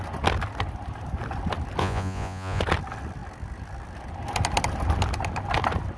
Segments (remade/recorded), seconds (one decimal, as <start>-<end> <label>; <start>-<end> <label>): 0.0-1.8 recorded; 1.8-2.6 remade; 2.6-6.0 recorded